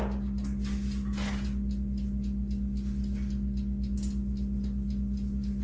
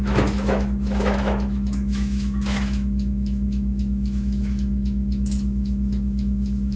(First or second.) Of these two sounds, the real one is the first